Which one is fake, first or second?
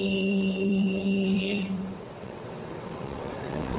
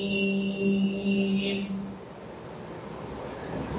first